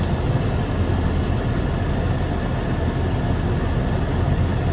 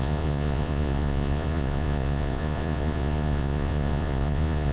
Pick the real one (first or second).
first